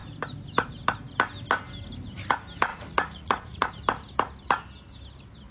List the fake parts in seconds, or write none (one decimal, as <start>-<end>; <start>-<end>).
2.7-3.7